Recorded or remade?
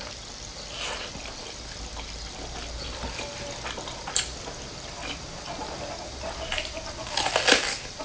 recorded